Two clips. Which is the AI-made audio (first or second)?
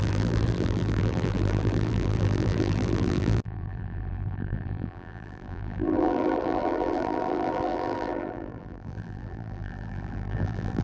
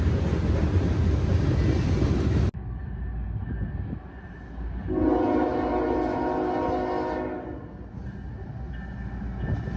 first